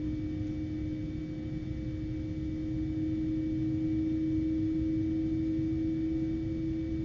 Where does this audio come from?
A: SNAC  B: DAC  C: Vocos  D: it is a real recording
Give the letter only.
D